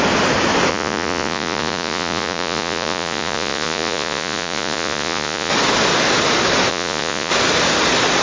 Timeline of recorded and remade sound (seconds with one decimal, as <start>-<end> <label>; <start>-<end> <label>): 0.0-0.7 recorded; 0.7-5.5 remade; 5.5-6.7 recorded; 6.7-7.3 remade; 7.3-8.2 recorded